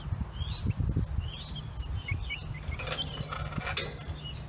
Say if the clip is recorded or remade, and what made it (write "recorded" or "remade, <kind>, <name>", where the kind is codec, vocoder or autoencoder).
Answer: recorded